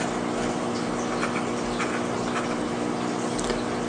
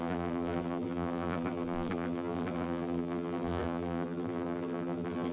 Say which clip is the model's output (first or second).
second